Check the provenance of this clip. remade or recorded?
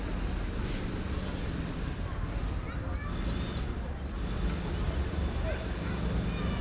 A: recorded